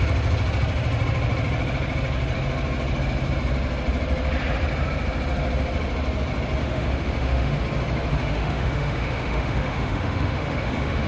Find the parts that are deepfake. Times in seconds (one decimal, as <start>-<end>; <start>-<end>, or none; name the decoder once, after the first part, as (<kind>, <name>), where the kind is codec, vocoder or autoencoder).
6.6-7.6 (autoencoder, DAC-VAE); 8.2-11.1